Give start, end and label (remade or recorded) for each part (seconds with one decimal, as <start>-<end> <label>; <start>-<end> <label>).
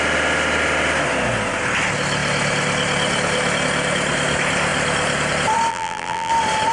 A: 0.0-5.7 recorded; 5.7-6.3 remade; 6.3-6.7 recorded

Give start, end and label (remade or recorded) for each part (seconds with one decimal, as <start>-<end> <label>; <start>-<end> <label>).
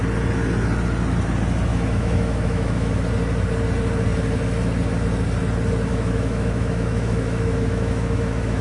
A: 0.0-1.7 recorded; 1.7-2.9 remade; 2.9-5.9 recorded; 5.9-8.6 remade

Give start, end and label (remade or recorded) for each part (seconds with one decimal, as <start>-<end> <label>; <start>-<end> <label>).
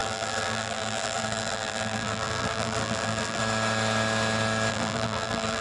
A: 0.0-3.4 remade; 3.4-4.7 recorded; 4.7-5.6 remade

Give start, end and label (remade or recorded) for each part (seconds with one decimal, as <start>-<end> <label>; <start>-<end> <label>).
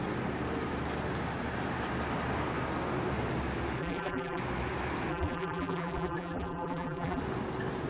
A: 0.0-3.8 recorded; 3.8-4.4 remade; 4.4-5.1 recorded; 5.1-7.2 remade; 7.2-7.9 recorded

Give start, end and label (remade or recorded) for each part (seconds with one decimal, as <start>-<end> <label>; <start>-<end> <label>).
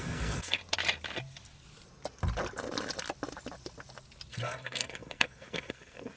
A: 0.0-0.6 remade; 0.6-4.3 recorded; 4.3-6.2 remade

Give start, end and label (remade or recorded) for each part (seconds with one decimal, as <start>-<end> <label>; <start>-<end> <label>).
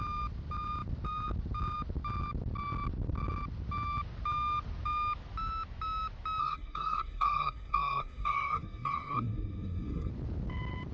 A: 0.0-6.4 recorded; 6.4-10.1 remade; 10.1-10.9 recorded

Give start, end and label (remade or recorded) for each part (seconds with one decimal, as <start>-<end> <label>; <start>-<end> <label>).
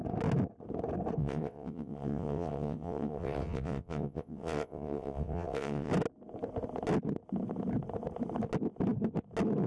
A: 0.0-1.2 recorded; 1.2-5.9 remade; 5.9-9.7 recorded